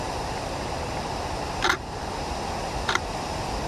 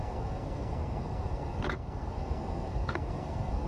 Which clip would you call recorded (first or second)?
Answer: first